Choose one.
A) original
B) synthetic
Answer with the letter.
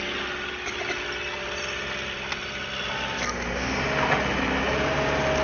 A